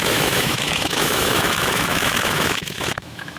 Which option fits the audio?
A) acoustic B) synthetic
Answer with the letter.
B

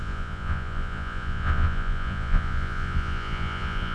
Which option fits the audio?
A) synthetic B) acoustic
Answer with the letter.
A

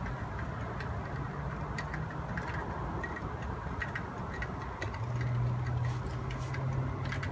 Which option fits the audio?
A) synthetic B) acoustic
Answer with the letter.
B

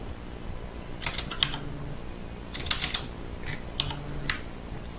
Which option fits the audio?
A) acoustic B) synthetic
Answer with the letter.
A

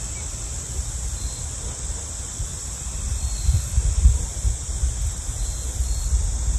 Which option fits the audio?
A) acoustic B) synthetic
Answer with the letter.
A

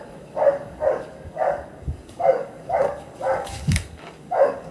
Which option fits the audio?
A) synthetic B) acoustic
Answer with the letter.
A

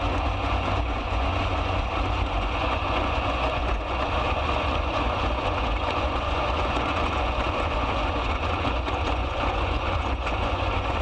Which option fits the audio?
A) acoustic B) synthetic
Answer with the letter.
B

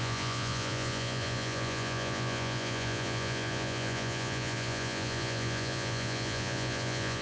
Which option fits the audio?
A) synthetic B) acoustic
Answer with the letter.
A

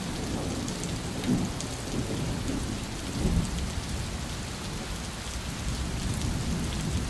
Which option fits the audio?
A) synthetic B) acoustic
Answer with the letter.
B